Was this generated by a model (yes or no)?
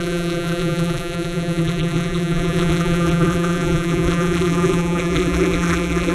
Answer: yes